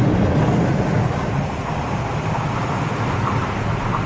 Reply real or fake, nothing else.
real